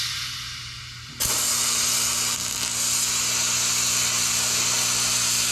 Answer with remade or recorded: recorded